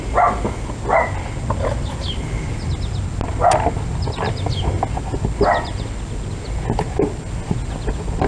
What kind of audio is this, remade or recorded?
recorded